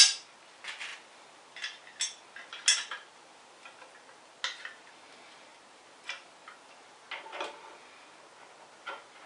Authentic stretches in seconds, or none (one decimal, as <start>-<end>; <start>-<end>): 0.0-9.3